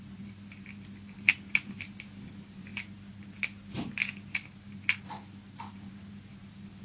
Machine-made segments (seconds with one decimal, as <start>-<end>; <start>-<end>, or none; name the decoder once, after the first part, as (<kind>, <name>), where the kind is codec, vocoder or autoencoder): none